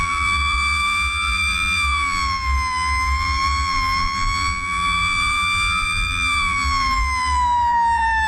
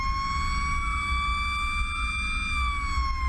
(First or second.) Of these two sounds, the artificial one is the first